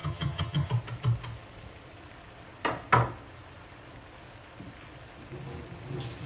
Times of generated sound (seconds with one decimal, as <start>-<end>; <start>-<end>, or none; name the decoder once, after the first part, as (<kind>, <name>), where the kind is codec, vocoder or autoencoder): 0.0-0.7 (vocoder, HiFi-GAN)